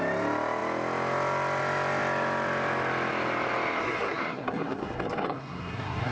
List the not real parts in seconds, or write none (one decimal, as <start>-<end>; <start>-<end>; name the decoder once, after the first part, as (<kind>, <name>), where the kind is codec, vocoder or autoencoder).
3.8-6.1 (codec, SNAC)